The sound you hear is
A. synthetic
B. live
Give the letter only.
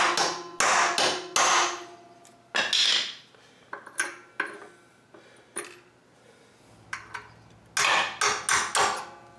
B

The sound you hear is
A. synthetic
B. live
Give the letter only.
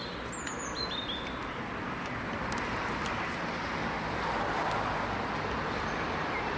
B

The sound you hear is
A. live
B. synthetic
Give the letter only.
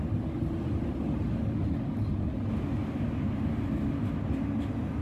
A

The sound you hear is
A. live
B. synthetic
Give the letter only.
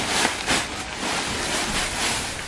A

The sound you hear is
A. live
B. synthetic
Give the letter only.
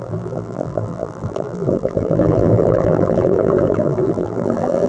B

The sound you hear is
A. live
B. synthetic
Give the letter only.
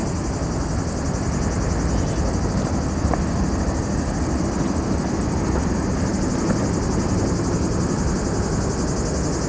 A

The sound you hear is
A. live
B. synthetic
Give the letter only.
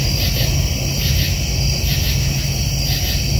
A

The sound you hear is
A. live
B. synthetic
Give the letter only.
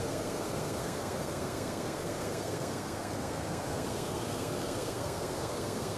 B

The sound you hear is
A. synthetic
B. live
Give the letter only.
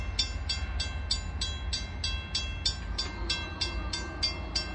B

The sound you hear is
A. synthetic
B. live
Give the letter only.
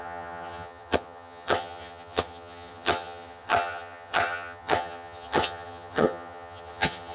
A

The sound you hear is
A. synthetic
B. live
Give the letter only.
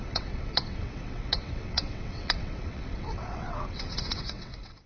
A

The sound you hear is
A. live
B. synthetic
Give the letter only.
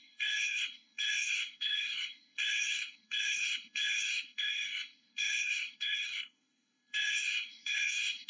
B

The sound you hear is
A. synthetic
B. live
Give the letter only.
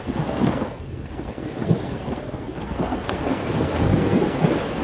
A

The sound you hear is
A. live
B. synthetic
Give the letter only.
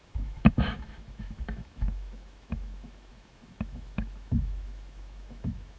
B